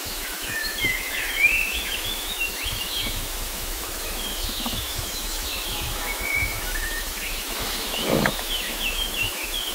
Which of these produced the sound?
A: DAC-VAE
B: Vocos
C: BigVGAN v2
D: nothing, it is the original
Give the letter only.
A